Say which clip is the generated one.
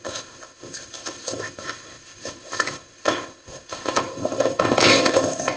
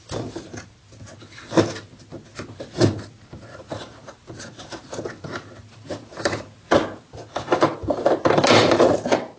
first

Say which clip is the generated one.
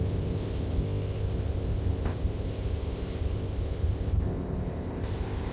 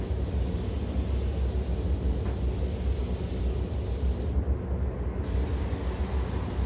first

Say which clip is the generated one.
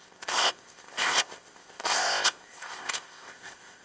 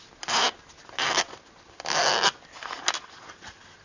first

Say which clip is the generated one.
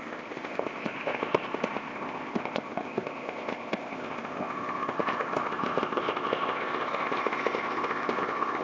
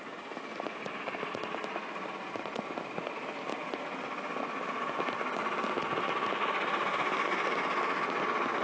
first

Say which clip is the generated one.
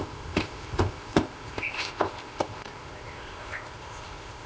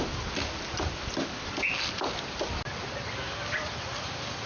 first